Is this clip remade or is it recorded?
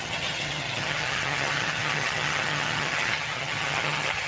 remade